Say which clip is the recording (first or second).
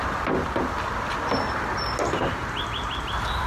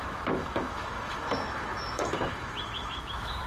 first